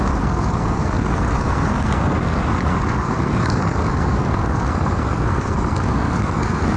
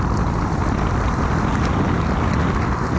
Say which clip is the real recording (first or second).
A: second